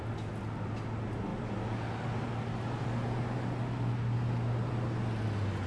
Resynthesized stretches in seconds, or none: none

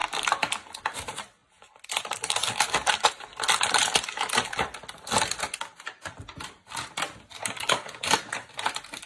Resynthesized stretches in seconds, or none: 7.4-8.1 (codec, DAC)